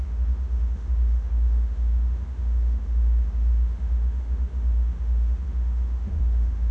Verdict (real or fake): fake